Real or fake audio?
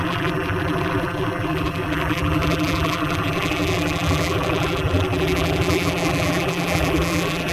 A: fake